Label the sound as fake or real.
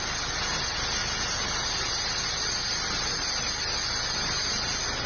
real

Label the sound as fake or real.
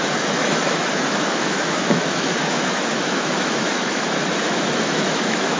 fake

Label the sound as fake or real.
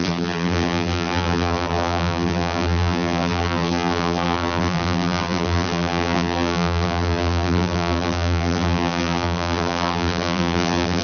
fake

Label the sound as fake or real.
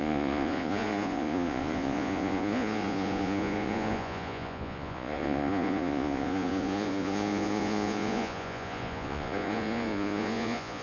fake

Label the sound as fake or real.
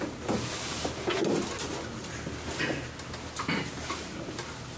real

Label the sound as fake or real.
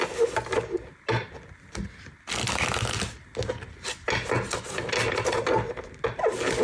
real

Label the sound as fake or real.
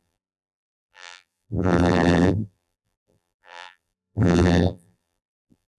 fake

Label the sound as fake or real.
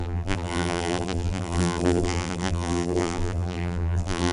fake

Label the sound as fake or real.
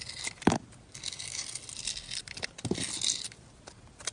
real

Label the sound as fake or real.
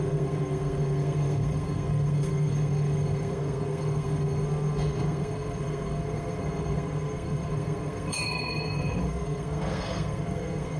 fake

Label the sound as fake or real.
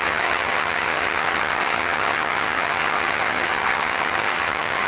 fake